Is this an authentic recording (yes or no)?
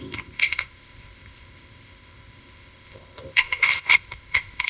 no